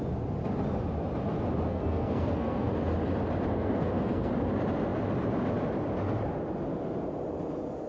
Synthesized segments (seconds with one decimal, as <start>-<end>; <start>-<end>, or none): 1.7-2.7; 3.5-4.3